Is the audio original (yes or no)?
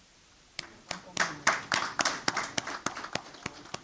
yes